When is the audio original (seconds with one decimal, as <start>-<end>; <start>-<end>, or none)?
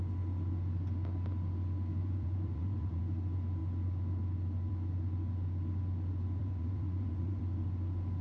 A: 0.0-2.0; 3.0-6.4; 7.4-8.2